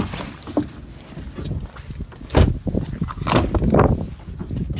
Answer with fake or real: real